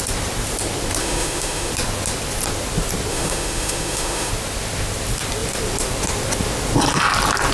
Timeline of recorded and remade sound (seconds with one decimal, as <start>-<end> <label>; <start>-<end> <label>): 0.0-1.0 recorded; 1.0-1.7 remade; 1.7-3.1 recorded; 3.1-4.3 remade; 4.3-7.5 recorded